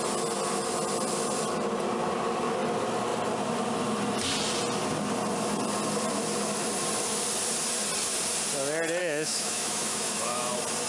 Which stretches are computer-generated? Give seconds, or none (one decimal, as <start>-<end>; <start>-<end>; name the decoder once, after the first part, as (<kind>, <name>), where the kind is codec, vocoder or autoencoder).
9.0-10.5 (autoencoder, DAC-VAE)